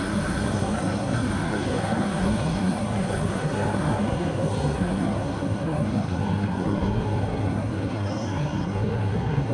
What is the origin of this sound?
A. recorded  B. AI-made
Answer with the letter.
B